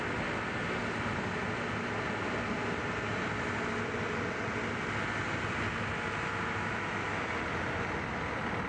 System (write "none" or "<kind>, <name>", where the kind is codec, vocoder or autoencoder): none